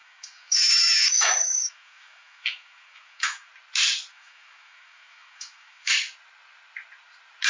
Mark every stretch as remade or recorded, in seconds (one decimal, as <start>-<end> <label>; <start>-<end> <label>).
0.0-3.5 remade; 3.5-4.1 recorded; 4.1-5.9 remade; 5.9-7.5 recorded